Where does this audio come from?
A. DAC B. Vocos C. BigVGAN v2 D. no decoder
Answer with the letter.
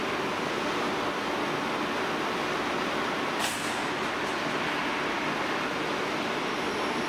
D